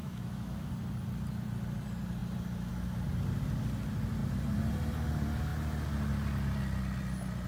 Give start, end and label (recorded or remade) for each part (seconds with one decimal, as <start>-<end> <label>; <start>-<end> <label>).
0.0-0.7 remade; 0.7-7.5 recorded